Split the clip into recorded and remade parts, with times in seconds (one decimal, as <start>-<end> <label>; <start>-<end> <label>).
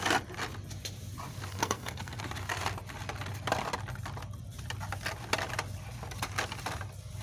0.0-1.5 recorded; 1.5-2.2 remade; 2.2-7.2 recorded